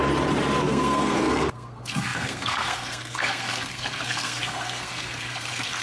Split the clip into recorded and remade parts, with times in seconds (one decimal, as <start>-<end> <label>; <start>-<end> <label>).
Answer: 0.0-0.6 recorded; 0.6-5.8 remade